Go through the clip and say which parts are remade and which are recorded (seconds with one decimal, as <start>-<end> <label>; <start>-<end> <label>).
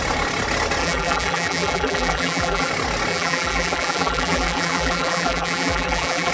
0.0-0.8 recorded; 0.8-2.7 remade; 2.7-3.1 recorded; 3.1-6.3 remade